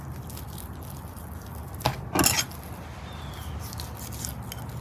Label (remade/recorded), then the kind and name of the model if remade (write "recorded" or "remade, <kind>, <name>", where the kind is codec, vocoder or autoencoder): recorded